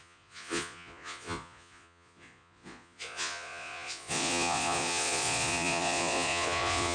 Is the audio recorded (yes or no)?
no